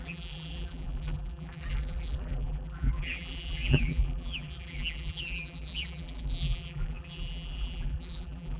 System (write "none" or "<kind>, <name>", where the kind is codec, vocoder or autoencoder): vocoder, BigVGAN v2